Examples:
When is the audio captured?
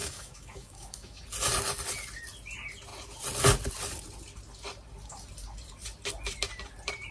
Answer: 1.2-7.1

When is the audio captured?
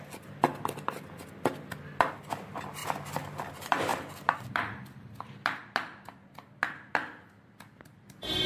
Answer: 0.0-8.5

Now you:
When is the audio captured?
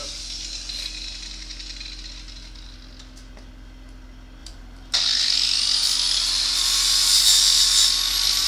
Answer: 0.0-4.4; 5.0-8.5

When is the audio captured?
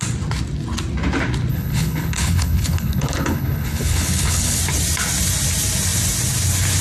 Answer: 0.0-1.5; 4.6-6.8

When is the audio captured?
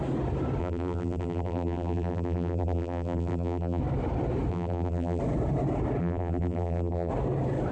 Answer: 0.0-0.6; 3.8-4.5; 5.2-6.0; 7.1-7.7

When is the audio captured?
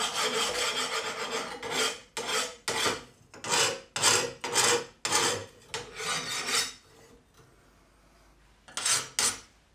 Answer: 0.0-9.7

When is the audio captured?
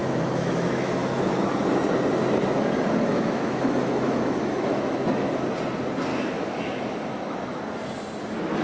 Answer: 1.5-3.1; 5.3-6.1; 7.6-8.6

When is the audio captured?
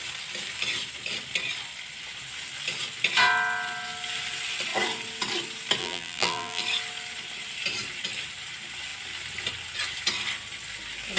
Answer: 0.0-5.8; 6.6-11.2